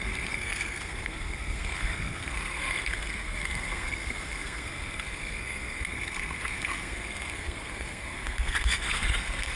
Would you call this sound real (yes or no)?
no